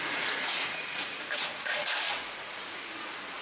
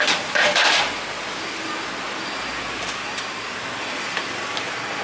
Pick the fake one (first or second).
first